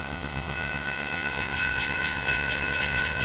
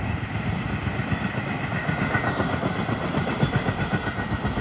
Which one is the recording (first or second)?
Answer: second